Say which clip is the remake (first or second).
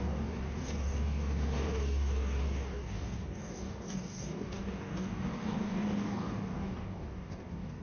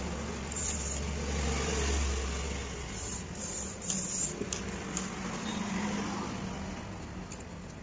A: first